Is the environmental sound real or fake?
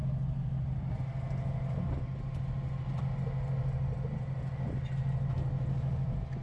real